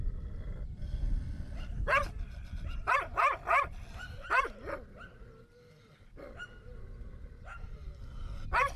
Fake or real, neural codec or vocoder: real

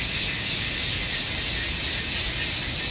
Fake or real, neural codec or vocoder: real